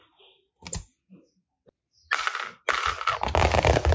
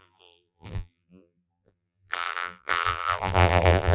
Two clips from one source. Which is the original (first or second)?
first